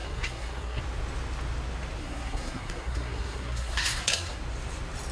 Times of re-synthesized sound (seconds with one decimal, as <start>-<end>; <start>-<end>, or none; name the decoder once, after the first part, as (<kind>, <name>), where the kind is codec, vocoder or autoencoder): 0.0-0.8 (codec, SNAC); 2.0-4.4